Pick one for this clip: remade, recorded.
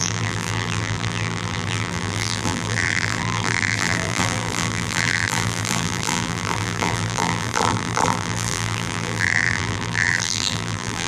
remade